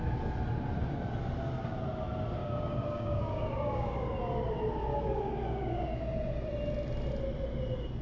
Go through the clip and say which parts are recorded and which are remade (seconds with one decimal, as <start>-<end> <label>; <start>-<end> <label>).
0.0-2.4 recorded; 2.4-4.2 remade; 4.2-4.9 recorded; 4.9-5.8 remade; 5.8-8.0 recorded